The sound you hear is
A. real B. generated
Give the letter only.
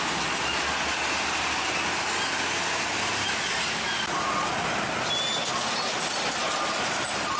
A